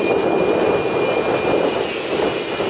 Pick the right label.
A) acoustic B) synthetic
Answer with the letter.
A